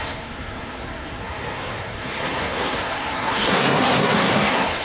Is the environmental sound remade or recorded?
remade